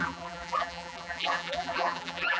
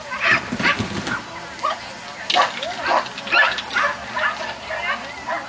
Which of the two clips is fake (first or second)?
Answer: first